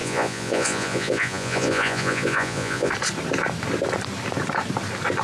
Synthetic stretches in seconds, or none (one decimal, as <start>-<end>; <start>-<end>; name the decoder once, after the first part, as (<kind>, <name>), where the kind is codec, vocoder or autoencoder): 0.0-2.9 (vocoder, Vocos)